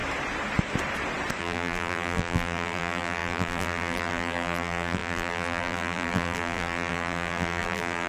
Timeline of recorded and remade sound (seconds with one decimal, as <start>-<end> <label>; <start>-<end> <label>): 0.0-1.4 recorded; 1.4-8.1 remade